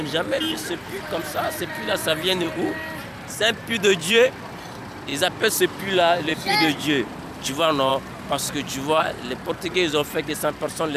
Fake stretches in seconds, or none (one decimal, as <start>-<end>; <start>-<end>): 0.0-5.1; 5.8-7.9; 9.0-11.0